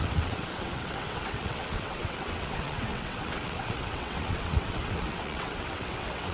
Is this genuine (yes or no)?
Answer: no